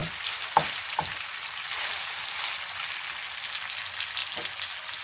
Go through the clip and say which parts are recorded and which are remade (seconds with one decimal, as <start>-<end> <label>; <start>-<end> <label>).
0.0-5.0 recorded